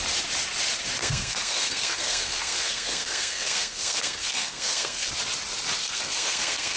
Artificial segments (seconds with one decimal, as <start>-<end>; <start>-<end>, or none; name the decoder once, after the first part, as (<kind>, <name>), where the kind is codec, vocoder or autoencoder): 1.0-5.1 (codec, SNAC); 5.8-6.8